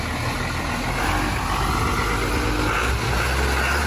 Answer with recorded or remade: recorded